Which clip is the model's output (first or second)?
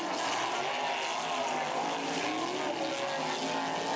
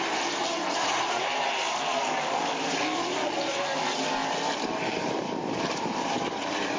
second